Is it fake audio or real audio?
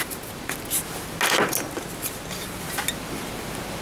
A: real